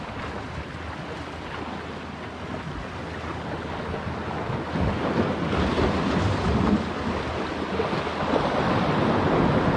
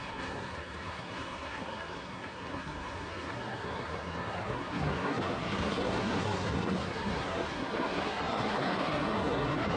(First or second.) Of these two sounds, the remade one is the second